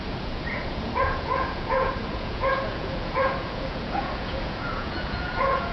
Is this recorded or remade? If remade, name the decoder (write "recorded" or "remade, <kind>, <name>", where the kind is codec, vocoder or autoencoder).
remade, vocoder, Vocos